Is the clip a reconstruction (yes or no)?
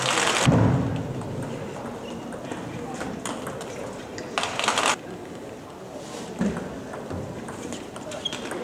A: no